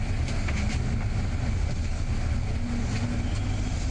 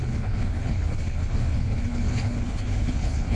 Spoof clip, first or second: second